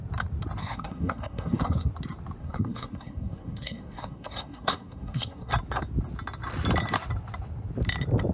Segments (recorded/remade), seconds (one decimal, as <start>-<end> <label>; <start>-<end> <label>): 0.0-0.6 recorded; 0.6-1.9 remade; 1.9-2.4 recorded; 2.4-5.5 remade; 5.5-8.3 recorded